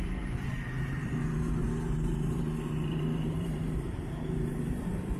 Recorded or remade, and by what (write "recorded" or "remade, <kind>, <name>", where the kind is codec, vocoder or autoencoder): remade, vocoder, BigVGAN v2